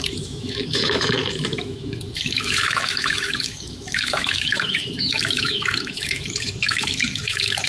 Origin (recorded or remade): remade